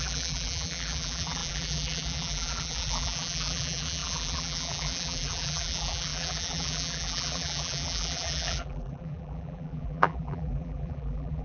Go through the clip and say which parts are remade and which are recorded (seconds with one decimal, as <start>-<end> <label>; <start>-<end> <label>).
0.0-11.4 remade